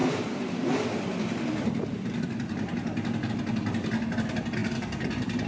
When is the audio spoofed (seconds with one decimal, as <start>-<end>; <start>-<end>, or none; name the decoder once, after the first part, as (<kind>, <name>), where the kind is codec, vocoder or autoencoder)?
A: 0.0-3.3 (vocoder, BigVGAN v2); 4.6-5.5